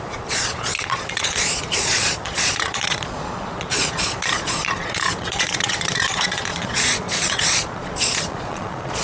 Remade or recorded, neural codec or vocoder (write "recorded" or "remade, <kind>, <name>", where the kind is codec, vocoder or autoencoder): remade, vocoder, Vocos